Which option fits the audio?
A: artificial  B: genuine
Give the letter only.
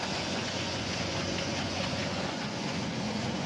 A